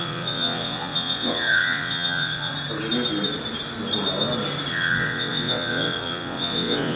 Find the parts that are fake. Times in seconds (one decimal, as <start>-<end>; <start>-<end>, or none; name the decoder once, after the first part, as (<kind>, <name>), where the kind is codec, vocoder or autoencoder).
0.0-2.5 (vocoder, WaveNeXt); 4.7-7.0